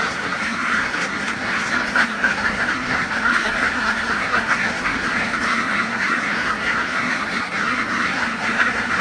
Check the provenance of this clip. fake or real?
fake